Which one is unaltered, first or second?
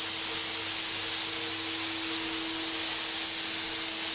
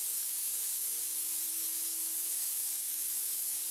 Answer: first